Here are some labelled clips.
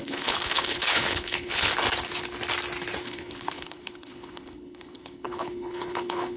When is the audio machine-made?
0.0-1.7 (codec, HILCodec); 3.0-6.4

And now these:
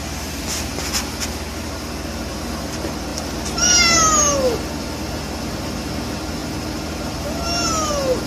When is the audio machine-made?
none

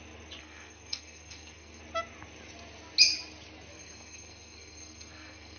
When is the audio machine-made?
0.4-1.8 (codec, SNAC); 3.7-5.6

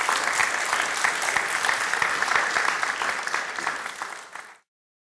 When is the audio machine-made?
none

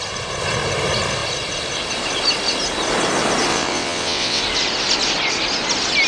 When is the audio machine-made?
3.5-4.4 (vocoder, WaveNeXt)

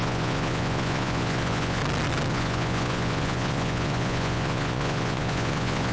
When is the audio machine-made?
0.0-1.8 (vocoder, Vocos); 2.3-5.9